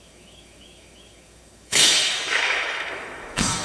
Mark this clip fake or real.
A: fake